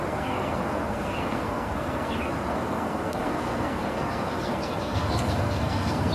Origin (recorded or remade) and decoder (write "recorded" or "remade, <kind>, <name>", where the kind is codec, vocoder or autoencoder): remade, codec, SNAC